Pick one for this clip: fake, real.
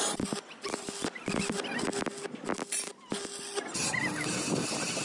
real